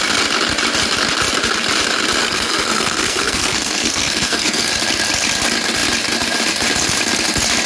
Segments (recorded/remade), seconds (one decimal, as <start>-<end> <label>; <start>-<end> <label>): 0.0-2.2 recorded; 2.2-4.7 remade; 4.7-7.7 recorded